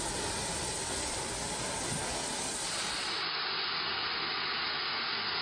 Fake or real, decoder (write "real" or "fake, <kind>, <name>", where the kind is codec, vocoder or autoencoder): real